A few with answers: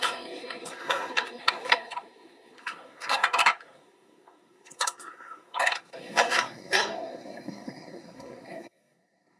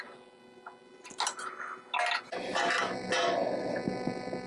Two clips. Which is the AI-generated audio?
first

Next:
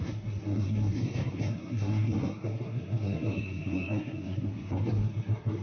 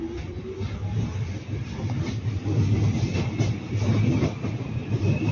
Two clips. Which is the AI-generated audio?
first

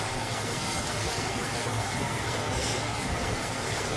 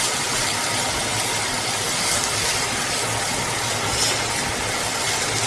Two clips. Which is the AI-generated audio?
first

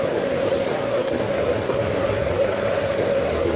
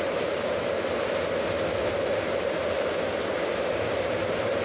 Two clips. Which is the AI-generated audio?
first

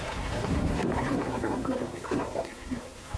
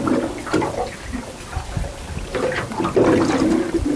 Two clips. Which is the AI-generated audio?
first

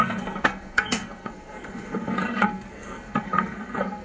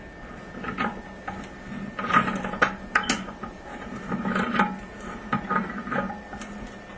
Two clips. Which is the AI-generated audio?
first